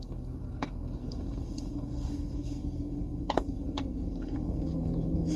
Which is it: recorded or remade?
remade